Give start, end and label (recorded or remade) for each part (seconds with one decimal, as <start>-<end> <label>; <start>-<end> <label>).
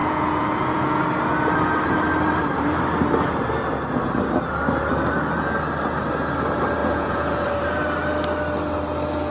0.0-1.0 remade; 1.0-6.8 recorded; 6.8-7.5 remade; 7.5-9.3 recorded